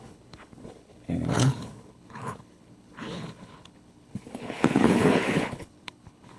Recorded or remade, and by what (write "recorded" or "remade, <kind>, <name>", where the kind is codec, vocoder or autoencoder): remade, codec, HILCodec